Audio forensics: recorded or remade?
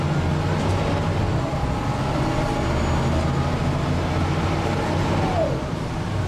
recorded